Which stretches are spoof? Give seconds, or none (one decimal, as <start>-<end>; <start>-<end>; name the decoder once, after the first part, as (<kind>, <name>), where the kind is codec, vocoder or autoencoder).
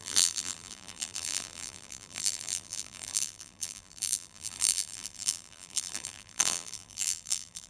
0.0-7.7 (vocoder, BigVGAN v2)